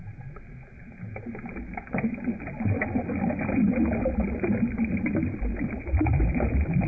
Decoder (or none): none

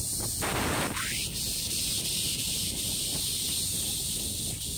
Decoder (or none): none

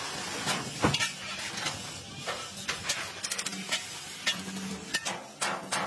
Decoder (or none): none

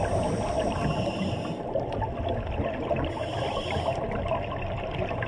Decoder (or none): none